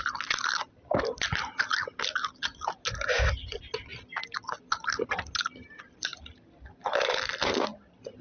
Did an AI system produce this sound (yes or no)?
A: no